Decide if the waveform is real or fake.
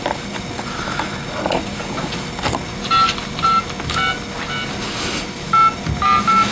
real